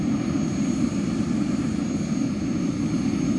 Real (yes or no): yes